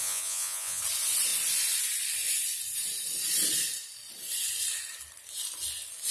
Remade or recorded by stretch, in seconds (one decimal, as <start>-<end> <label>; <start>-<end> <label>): 0.0-0.8 remade; 0.8-6.1 recorded